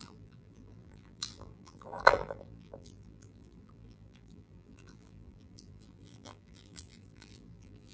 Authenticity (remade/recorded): remade